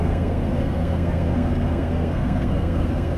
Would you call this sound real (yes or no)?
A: no